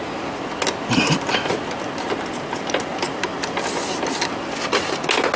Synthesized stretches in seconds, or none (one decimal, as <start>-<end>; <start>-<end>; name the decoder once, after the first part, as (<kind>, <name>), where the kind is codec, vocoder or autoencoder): none

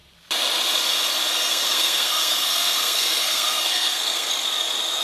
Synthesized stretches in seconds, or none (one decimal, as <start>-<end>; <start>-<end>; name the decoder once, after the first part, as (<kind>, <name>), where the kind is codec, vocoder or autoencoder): 1.3-4.3 (codec, SNAC)

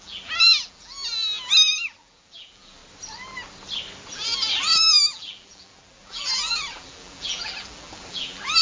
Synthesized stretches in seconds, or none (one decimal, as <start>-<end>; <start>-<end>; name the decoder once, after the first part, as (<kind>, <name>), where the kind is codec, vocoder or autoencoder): 0.0-2.8 (vocoder, BigVGAN v2); 4.1-8.6

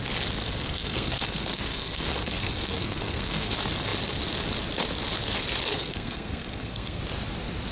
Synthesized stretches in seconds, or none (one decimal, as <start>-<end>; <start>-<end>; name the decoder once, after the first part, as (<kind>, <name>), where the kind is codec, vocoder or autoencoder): 0.4-3.5 (codec, SNAC); 5.7-7.0

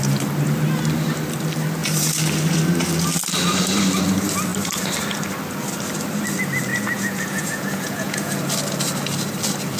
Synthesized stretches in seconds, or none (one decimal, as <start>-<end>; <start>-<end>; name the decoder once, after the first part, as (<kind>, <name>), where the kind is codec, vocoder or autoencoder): 6.7-8.4 (vocoder, Vocos)

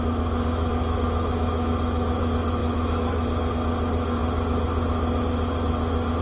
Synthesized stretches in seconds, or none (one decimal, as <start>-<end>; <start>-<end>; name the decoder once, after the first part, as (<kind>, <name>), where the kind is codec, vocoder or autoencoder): 0.8-2.2 (autoencoder, DAC-VAE)